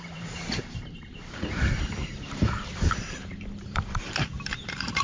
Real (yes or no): no